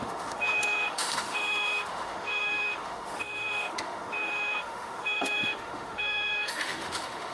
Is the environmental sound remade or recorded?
remade